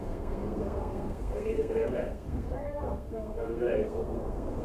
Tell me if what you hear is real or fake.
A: fake